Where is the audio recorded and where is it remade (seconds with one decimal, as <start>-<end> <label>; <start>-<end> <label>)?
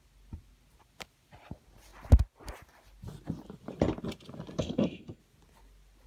0.0-4.6 recorded; 4.6-5.2 remade; 5.2-6.1 recorded